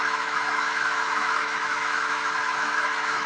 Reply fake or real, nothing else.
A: fake